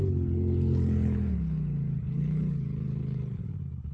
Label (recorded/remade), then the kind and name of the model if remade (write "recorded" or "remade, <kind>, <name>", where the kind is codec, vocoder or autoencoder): remade, codec, HILCodec